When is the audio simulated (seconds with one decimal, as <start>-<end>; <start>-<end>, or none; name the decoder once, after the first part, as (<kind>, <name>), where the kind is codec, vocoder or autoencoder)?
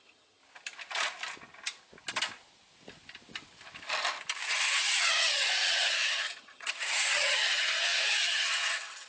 0.0-0.4 (vocoder, HiFi-GAN); 4.5-9.1